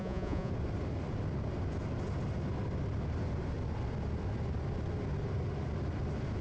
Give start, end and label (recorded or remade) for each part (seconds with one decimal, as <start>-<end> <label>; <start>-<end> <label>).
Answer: 0.0-0.5 remade; 0.5-6.4 recorded